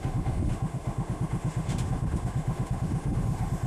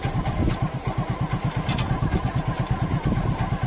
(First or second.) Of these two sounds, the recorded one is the second